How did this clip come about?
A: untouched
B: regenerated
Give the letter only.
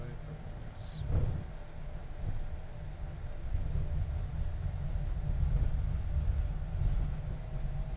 A